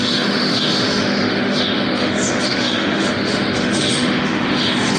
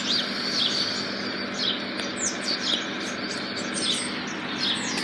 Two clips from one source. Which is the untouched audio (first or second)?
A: second